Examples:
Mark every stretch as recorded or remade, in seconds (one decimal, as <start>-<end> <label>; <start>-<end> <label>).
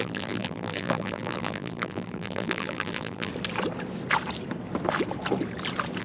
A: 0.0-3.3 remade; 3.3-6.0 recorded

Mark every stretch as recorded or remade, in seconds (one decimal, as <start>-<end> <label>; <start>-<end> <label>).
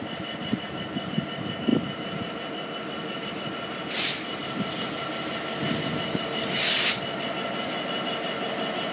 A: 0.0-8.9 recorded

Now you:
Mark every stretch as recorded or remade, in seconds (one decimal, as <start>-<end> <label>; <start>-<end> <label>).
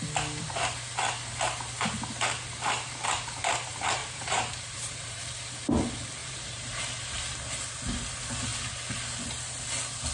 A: 0.0-4.0 recorded; 4.0-5.2 remade; 5.2-6.2 recorded; 6.2-6.8 remade; 6.8-10.1 recorded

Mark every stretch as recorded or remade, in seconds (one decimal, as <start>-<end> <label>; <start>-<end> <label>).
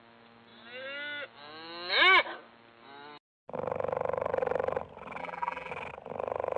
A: 0.0-5.2 recorded; 5.2-5.7 remade; 5.7-6.6 recorded